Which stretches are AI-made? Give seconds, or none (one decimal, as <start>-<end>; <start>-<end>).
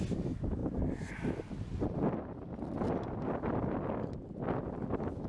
none